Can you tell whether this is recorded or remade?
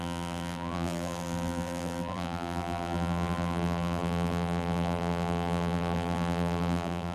remade